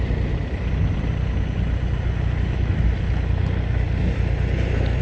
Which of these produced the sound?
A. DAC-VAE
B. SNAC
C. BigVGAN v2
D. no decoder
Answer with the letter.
D